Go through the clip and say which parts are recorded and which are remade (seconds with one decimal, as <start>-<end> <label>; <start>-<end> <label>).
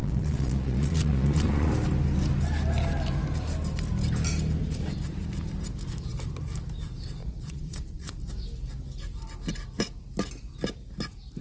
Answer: 0.0-1.7 remade; 1.7-7.2 recorded; 7.2-8.2 remade; 8.2-11.4 recorded